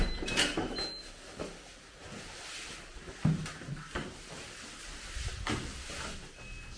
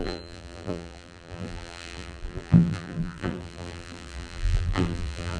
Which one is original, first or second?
first